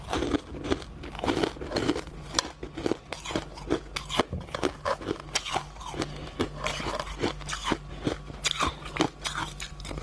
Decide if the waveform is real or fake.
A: real